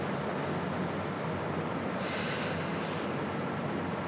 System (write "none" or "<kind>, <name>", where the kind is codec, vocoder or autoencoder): none